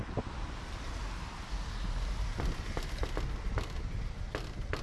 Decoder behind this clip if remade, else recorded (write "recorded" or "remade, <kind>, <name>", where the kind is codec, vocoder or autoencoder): recorded